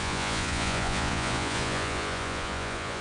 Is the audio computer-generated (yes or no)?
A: yes